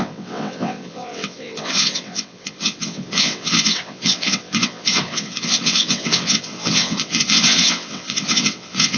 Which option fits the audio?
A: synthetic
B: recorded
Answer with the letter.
A